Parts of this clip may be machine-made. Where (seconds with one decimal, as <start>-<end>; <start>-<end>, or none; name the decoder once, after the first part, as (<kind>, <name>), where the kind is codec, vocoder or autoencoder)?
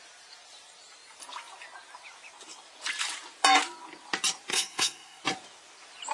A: 4.5-5.2 (codec, SNAC)